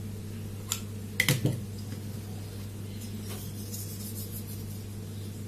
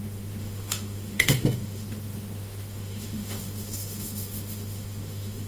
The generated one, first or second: second